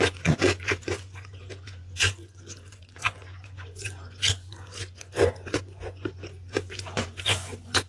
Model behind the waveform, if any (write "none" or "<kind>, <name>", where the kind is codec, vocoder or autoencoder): vocoder, Vocos